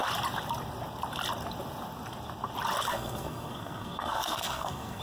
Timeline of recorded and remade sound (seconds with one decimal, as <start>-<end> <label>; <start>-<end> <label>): 0.0-2.9 recorded; 2.9-5.0 remade